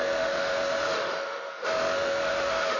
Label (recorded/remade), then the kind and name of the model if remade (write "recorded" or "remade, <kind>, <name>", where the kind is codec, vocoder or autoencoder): remade, autoencoder, DAC-VAE